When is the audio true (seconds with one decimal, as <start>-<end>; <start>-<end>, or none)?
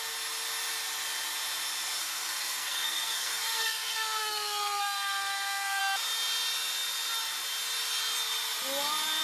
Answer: 0.0-2.0; 5.8-9.2